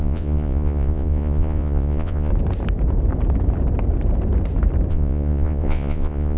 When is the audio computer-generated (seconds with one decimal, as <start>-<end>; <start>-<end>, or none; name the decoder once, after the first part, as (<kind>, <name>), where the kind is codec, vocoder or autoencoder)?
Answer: 0.0-2.3 (vocoder, Vocos); 4.9-6.4